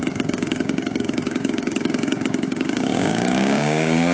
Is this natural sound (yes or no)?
no